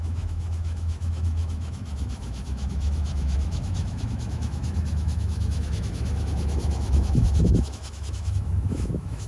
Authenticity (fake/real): fake